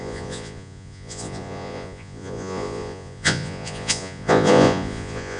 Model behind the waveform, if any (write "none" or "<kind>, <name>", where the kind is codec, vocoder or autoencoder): vocoder, Vocos